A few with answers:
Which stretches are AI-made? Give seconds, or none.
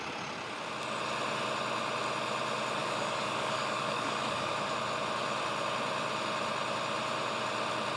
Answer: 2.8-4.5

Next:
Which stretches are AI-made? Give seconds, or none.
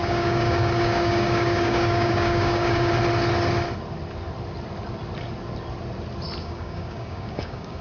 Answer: 0.0-2.9; 6.4-7.8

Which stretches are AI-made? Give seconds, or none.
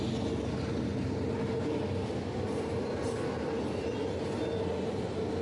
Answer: none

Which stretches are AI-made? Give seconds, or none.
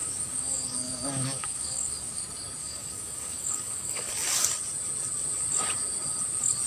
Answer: 0.0-2.2; 2.6-4.1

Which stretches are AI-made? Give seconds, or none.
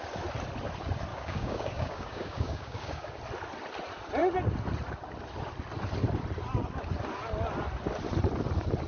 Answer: 1.1-3.2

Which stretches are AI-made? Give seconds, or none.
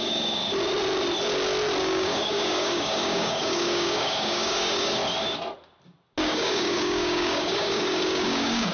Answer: 0.0-0.4; 1.8-5.0; 6.2-8.7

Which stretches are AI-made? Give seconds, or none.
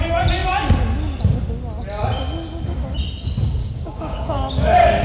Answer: 3.6-4.4